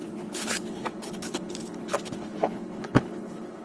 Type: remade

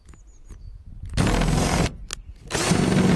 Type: recorded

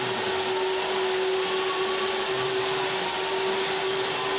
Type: recorded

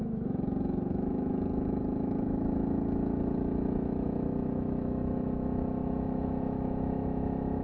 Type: remade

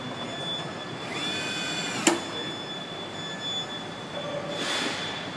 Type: recorded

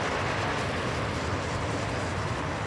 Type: recorded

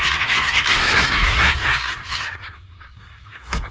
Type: remade